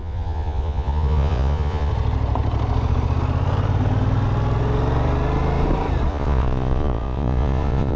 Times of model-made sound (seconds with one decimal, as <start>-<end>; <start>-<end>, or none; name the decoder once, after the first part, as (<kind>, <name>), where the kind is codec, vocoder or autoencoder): 0.0-1.9 (vocoder, Vocos); 6.1-8.0